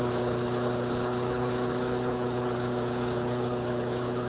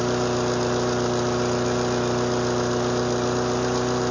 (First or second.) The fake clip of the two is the first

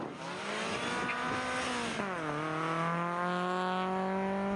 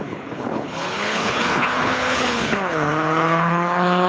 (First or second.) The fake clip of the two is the second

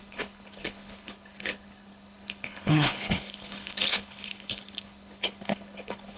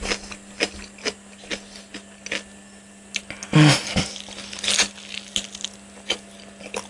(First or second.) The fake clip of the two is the first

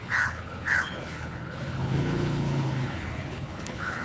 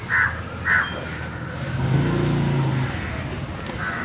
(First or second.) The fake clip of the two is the first